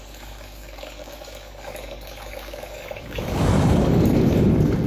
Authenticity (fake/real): fake